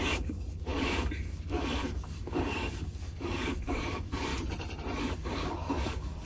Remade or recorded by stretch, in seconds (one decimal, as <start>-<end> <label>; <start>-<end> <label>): 0.0-4.3 remade; 4.3-5.0 recorded; 5.0-6.2 remade